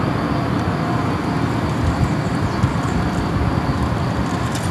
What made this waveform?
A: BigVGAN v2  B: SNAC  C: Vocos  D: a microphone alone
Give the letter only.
D